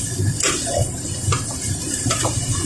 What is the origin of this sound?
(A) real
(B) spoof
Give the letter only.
A